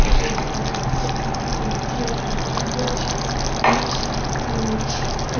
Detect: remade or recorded recorded